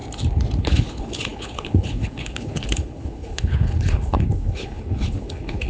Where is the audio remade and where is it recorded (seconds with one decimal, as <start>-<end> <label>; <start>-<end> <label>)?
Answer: 0.0-0.6 recorded; 0.6-5.7 remade